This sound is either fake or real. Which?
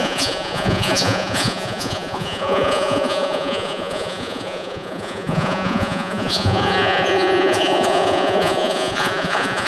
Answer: fake